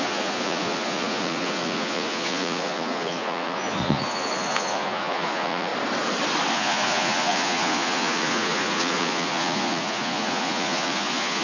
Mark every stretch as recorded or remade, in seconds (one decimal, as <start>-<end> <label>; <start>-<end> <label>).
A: 0.0-5.7 remade; 5.7-6.5 recorded; 6.5-11.4 remade